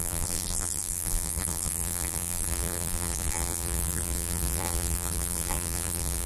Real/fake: fake